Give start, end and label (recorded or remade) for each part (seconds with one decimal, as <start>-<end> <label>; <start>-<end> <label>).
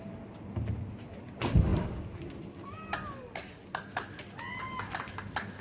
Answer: 0.0-5.6 recorded